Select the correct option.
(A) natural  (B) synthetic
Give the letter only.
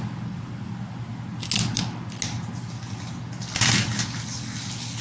A